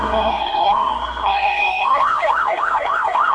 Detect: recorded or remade remade